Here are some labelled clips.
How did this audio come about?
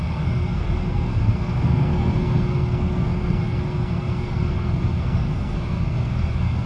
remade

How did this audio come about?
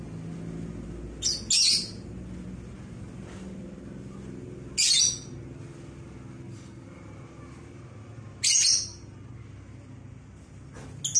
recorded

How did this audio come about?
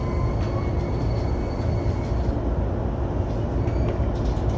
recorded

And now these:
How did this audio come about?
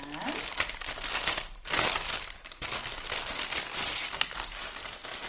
recorded